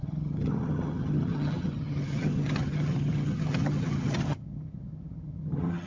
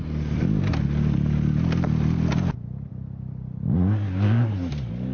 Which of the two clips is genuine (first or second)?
second